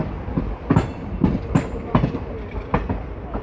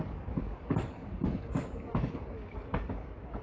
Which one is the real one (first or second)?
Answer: first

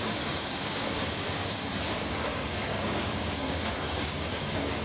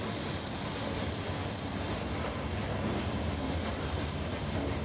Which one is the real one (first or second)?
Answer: second